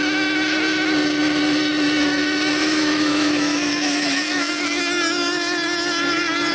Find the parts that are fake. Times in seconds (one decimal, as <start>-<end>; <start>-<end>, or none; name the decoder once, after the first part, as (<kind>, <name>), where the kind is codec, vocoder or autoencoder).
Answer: 2.6-4.8 (autoencoder, DAC-VAE)